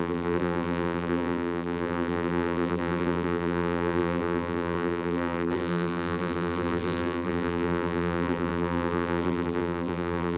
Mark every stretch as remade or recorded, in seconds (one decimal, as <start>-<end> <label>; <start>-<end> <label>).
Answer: 0.0-10.4 remade